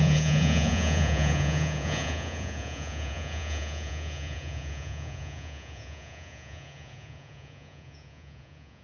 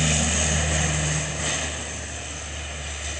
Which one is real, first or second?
second